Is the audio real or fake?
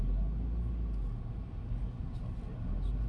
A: real